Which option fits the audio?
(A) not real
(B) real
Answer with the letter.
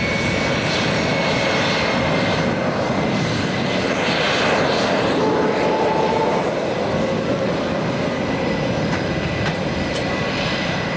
B